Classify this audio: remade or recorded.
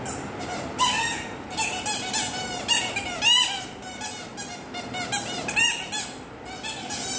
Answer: recorded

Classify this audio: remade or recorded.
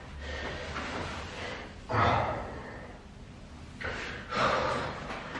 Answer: recorded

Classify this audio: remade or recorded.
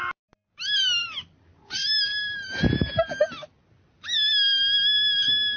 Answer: recorded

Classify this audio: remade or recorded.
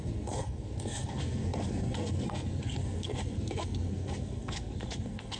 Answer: remade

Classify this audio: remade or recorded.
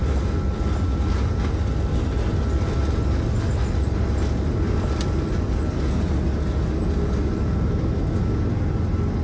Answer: recorded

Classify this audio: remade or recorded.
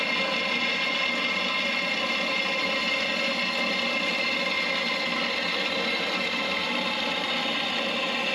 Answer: recorded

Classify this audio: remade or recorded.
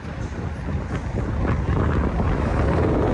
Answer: recorded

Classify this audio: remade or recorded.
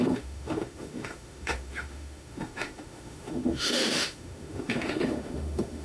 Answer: remade